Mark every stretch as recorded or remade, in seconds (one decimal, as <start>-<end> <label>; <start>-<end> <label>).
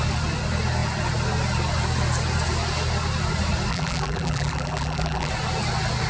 0.0-3.7 recorded; 3.7-5.3 remade; 5.3-6.1 recorded